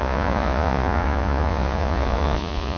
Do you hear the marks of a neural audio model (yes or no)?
yes